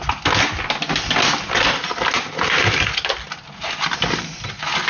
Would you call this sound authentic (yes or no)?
yes